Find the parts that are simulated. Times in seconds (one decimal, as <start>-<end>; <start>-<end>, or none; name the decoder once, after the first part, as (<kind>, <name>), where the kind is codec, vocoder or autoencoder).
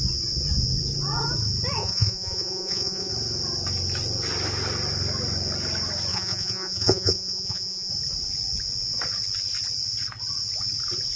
1.8-3.1 (vocoder, Vocos); 6.1-7.9